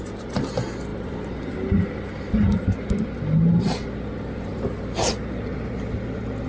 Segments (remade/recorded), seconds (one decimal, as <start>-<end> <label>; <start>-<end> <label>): 0.0-6.5 recorded